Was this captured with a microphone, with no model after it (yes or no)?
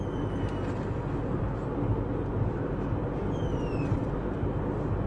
yes